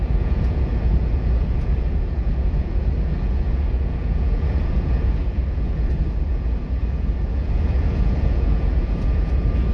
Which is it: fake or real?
fake